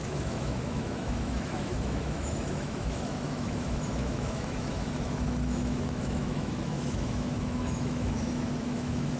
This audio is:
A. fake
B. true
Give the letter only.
A